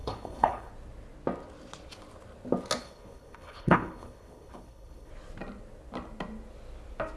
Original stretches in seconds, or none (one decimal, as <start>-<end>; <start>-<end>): 0.7-2.8; 5.1-7.2